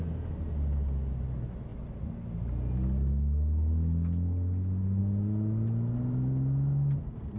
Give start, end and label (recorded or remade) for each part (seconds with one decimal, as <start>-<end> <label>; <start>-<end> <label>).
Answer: 0.0-7.4 recorded